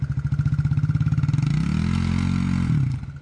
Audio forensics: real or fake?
real